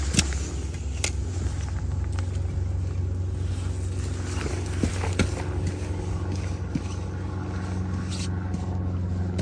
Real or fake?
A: real